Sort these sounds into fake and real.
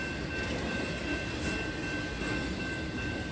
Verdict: real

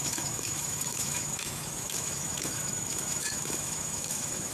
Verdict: fake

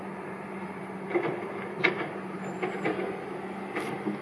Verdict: real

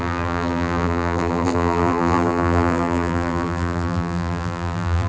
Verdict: fake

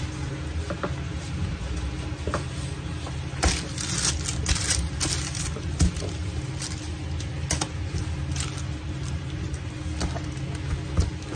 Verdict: real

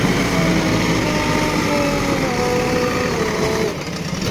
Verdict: real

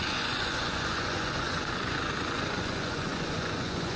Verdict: fake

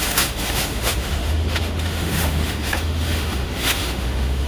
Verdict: fake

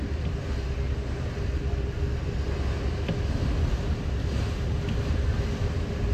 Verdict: real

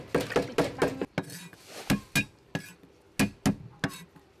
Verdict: real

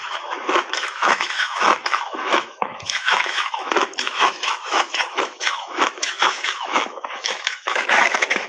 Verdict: fake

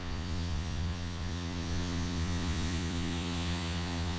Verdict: fake